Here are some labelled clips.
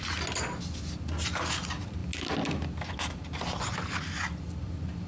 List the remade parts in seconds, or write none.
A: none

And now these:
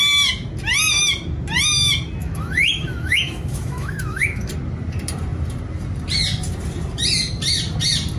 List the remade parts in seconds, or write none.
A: 2.2-4.5 (autoencoder, DAC-VAE)

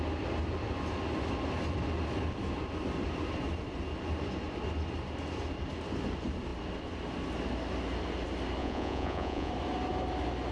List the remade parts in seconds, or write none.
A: 8.6-9.5 (vocoder, Vocos)

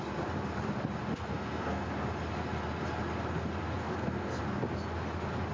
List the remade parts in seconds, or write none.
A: 1.1-1.9 (codec, SNAC); 3.8-4.4

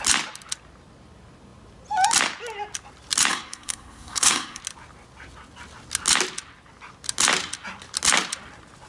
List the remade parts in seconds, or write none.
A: 3.3-4.6 (codec, SNAC)

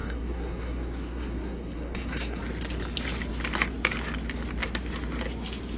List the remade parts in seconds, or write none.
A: 0.0-2.4 (codec, SNAC)

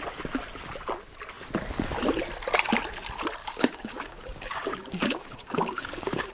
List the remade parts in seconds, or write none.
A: 3.4-6.3 (codec, DAC)

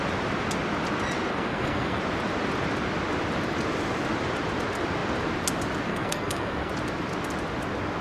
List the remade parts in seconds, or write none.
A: 1.3-2.0 (codec, SNAC); 5.9-6.7